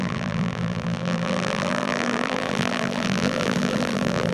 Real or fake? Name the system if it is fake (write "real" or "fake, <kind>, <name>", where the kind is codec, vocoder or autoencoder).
fake, vocoder, BigVGAN v2